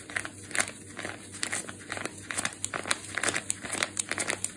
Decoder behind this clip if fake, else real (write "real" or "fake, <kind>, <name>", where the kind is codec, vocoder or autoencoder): real